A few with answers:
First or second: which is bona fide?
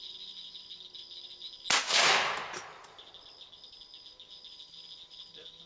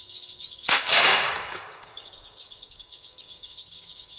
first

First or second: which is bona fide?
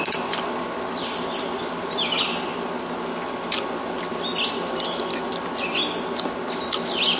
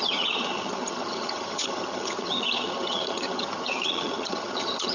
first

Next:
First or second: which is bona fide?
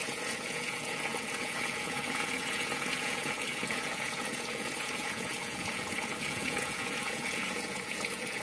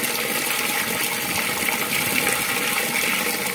second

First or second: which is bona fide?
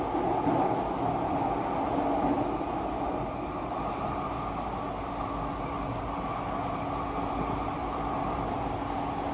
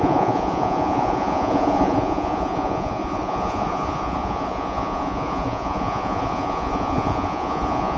first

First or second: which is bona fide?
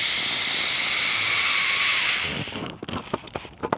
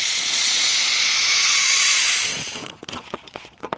first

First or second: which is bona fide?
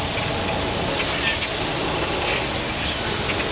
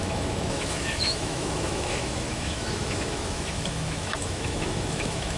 first